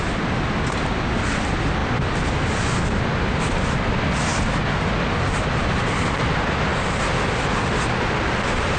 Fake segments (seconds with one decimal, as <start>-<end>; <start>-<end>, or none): none